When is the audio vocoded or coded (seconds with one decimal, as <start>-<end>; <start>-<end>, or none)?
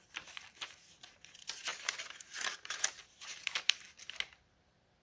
1.7-3.4